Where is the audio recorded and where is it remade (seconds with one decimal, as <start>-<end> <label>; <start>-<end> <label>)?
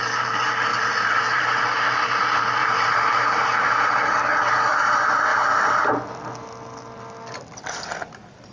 0.0-0.7 recorded; 0.7-1.6 remade; 1.6-2.6 recorded; 2.6-4.0 remade; 4.0-5.3 recorded; 5.3-5.8 remade; 5.8-8.5 recorded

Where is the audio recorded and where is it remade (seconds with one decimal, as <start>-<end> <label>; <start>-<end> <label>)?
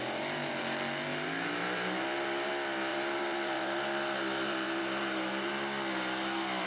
0.0-1.1 recorded; 1.1-2.5 remade; 2.5-2.9 recorded; 2.9-5.5 remade; 5.5-6.7 recorded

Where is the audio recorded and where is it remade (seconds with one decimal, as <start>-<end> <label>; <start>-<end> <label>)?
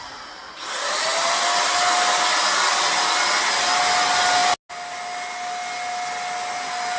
0.0-7.0 recorded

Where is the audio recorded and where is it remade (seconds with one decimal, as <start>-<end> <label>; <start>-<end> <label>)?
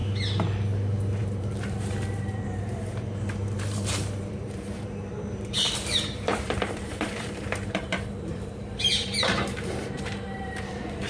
0.0-1.2 recorded; 1.2-11.1 remade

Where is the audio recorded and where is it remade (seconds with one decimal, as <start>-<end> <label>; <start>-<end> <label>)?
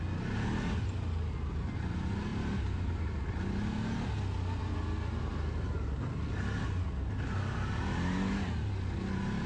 0.0-2.3 recorded; 2.3-3.2 remade; 3.2-9.5 recorded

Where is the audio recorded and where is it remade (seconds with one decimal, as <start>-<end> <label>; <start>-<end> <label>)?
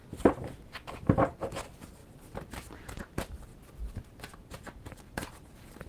0.0-1.0 recorded; 1.0-3.5 remade; 3.5-4.3 recorded; 4.3-5.9 remade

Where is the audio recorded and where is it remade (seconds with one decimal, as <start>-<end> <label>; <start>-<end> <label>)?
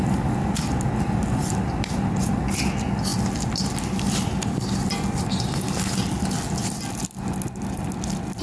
0.0-8.4 recorded